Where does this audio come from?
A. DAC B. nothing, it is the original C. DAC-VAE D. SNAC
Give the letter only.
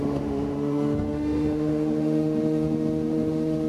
C